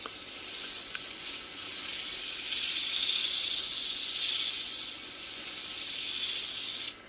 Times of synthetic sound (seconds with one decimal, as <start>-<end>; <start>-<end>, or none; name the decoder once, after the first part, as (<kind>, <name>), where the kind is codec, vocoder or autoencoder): 0.6-1.5 (vocoder, Vocos); 3.2-5.5